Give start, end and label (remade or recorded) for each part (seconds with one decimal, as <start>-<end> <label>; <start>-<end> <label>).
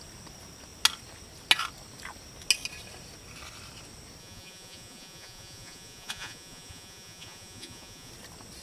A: 0.0-4.2 recorded; 4.2-8.1 remade; 8.1-8.6 recorded